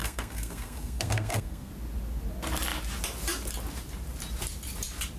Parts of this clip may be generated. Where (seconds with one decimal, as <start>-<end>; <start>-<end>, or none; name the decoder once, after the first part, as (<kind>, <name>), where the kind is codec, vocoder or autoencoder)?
0.0-1.7 (codec, SNAC)